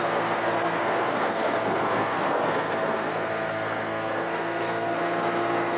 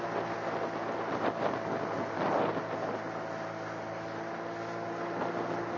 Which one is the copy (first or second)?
first